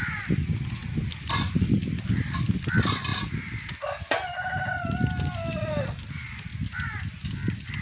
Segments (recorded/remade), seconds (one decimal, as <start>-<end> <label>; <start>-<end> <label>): 0.0-7.8 recorded